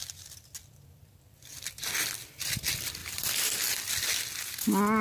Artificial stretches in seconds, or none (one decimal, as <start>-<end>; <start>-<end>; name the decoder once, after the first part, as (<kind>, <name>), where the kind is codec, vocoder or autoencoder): 0.0-2.5 (vocoder, BigVGAN v2); 3.0-4.1